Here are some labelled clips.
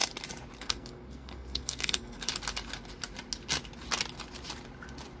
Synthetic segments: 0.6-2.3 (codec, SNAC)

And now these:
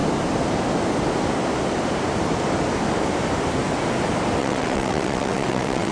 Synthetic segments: 4.4-5.9 (vocoder, WaveNeXt)

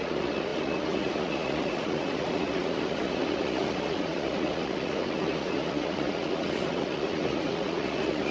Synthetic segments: 0.0-8.3 (vocoder, Vocos)

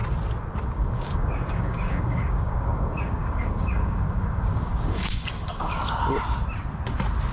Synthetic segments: 0.6-5.8 (codec, DAC)

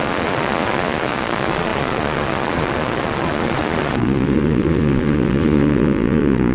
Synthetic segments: 0.0-6.5 (vocoder, Vocos)

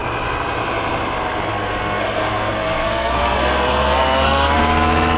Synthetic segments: 1.5-4.6 (codec, SNAC)